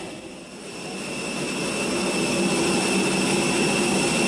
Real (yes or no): yes